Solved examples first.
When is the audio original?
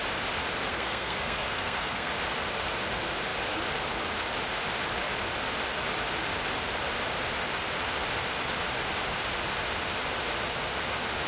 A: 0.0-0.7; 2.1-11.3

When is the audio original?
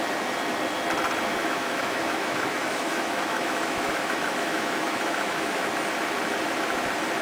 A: 0.0-1.4; 5.7-7.2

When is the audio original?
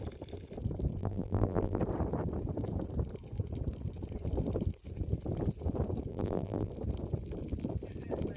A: 0.0-1.0; 1.8-6.1; 6.7-8.4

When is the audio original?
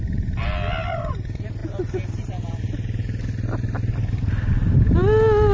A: 0.0-5.5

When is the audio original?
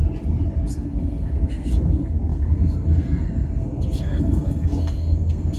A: 0.0-0.7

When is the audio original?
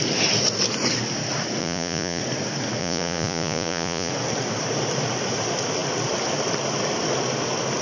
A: 0.0-1.6; 2.2-2.8; 4.1-7.8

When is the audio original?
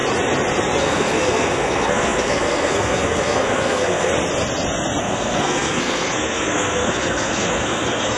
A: 0.0-0.8; 4.1-5.0